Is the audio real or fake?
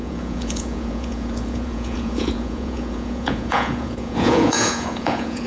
fake